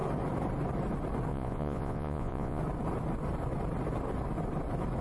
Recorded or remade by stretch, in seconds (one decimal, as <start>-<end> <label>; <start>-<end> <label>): 0.0-1.3 recorded; 1.3-2.6 remade; 2.6-5.0 recorded